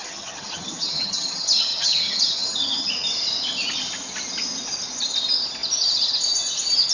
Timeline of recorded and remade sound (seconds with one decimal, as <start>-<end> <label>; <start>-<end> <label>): 0.0-2.9 remade; 2.9-6.9 recorded